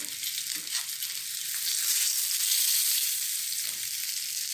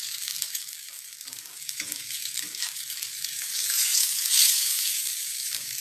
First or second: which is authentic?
first